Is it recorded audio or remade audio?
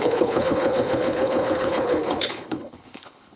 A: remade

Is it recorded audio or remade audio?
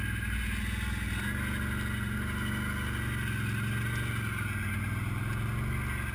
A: recorded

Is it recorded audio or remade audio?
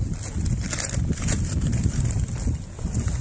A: recorded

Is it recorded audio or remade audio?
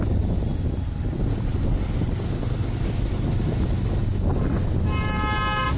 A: recorded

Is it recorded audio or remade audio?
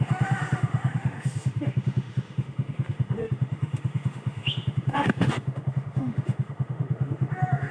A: remade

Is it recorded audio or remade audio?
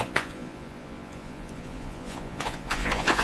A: remade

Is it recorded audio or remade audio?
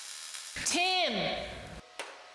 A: recorded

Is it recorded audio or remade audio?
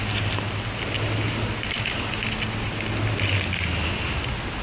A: recorded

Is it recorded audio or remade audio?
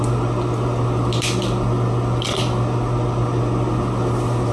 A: recorded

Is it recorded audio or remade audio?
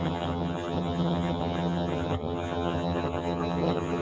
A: remade